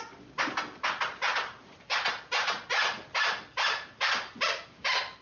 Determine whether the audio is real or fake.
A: real